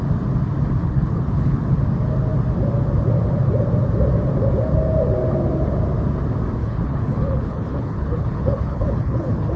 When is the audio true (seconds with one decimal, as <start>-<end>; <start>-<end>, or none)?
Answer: 0.0-0.8; 1.6-6.6